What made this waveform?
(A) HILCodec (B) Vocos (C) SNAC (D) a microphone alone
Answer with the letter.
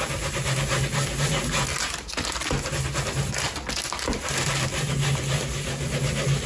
D